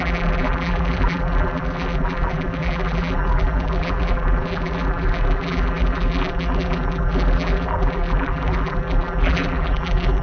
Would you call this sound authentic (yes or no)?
no